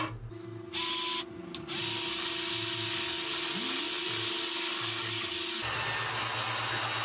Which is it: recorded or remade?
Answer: recorded